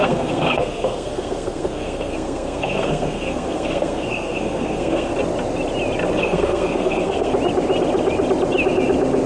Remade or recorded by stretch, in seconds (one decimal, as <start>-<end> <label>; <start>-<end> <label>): 0.0-5.1 remade; 5.1-6.2 recorded; 6.2-7.3 remade; 7.3-9.3 recorded